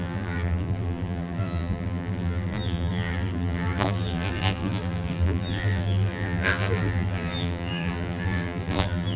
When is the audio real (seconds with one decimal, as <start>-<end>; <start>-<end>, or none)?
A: none

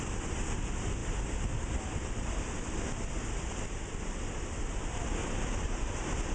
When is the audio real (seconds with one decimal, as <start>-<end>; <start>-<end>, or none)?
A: 0.0-5.2

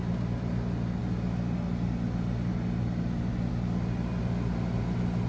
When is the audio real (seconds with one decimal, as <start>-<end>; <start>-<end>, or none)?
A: 0.0-5.3

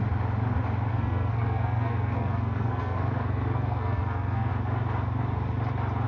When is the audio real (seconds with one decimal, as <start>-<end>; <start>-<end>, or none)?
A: 0.0-0.9; 4.5-6.1